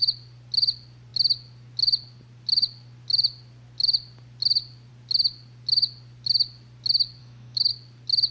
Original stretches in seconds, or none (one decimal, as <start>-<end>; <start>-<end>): 0.0-7.2; 7.7-8.3